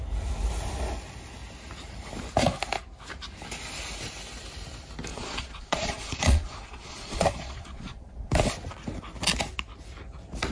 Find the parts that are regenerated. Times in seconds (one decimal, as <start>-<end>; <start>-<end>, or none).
5.1-8.3